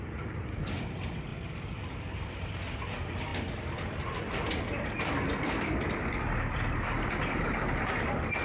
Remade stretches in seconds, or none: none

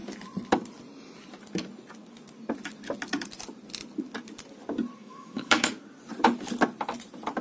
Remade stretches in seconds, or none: 5.0-5.7 (autoencoder, DAC-VAE)

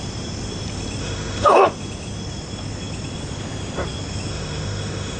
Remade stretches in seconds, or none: 1.0-1.6 (autoencoder, DAC-VAE); 4.3-5.2

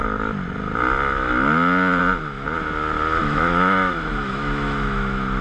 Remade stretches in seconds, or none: 3.2-5.4 (autoencoder, DAC-VAE)

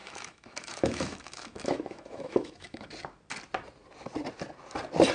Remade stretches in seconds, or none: 0.0-2.9 (autoencoder, DAC-VAE)

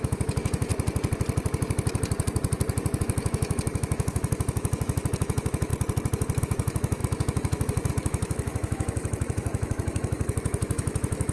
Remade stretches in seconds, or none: 0.0-0.7 (autoencoder, DAC-VAE); 3.0-5.7; 6.4-11.3